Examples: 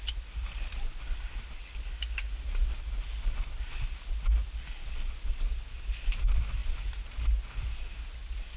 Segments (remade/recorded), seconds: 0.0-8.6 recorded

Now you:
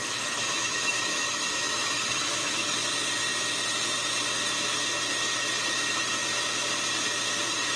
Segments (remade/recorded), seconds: 0.0-2.6 remade; 2.6-7.8 recorded

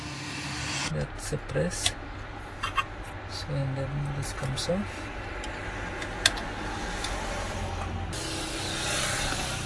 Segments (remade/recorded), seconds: 0.0-9.7 recorded

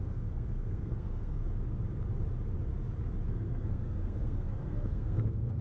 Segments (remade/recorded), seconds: 0.0-1.4 remade; 1.4-3.3 recorded; 3.3-5.6 remade

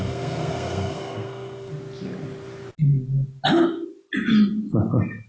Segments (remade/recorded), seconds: 0.0-1.7 remade; 1.7-5.3 recorded

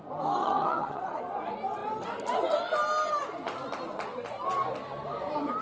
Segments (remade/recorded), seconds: 0.0-0.4 recorded; 0.4-1.2 remade; 1.2-5.6 recorded

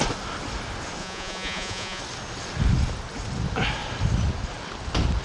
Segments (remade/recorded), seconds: 0.0-1.0 recorded; 1.0-2.0 remade; 2.0-5.2 recorded